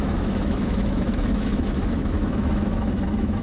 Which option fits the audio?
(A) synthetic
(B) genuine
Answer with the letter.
A